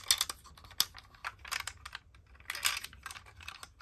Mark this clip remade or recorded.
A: recorded